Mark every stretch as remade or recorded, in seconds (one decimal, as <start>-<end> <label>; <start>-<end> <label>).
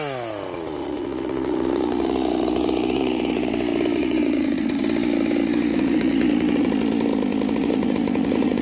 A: 0.0-0.8 recorded; 0.8-3.5 remade; 3.5-4.0 recorded; 4.0-4.8 remade; 4.8-5.7 recorded; 5.7-6.7 remade; 6.7-7.6 recorded; 7.6-8.6 remade